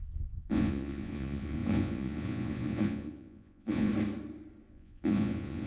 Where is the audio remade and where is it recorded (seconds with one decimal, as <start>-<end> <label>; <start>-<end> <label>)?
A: 0.0-3.9 remade; 3.9-4.7 recorded; 4.7-5.7 remade